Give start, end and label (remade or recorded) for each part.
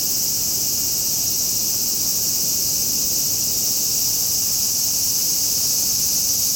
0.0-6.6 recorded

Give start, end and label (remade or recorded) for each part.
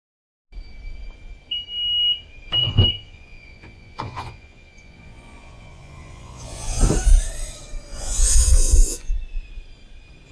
0.0-2.6 recorded; 2.6-6.8 remade; 6.8-7.9 recorded; 7.9-9.1 remade; 9.1-10.3 recorded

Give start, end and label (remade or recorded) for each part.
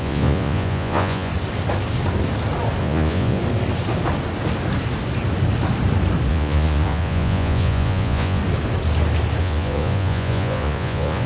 0.0-1.3 remade; 1.3-2.8 recorded; 2.8-3.4 remade; 3.4-6.3 recorded; 6.3-8.4 remade; 8.4-9.4 recorded; 9.4-11.3 remade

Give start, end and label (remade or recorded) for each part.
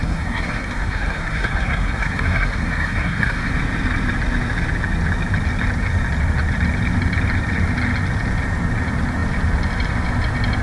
0.0-3.5 remade; 3.5-10.6 recorded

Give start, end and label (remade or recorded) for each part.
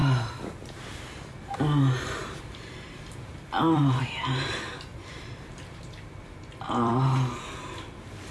0.0-2.2 recorded; 2.2-4.0 remade; 4.0-4.9 recorded; 4.9-6.9 remade; 6.9-8.3 recorded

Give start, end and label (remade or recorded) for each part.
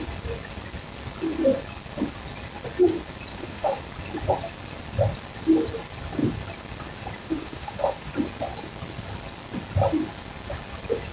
0.0-3.3 recorded; 3.3-3.8 remade; 3.8-7.2 recorded; 7.2-8.1 remade; 8.1-11.1 recorded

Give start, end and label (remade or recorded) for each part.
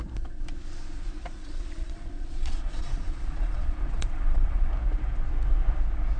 0.0-1.4 recorded; 1.4-4.7 remade; 4.7-6.2 recorded